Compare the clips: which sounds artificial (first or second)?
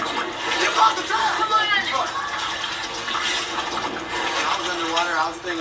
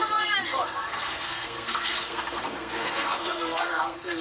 second